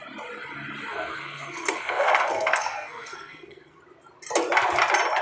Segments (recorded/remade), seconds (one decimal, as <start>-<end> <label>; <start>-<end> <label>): 0.0-0.9 recorded; 0.9-3.8 remade; 3.8-5.2 recorded